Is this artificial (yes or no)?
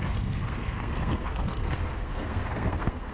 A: yes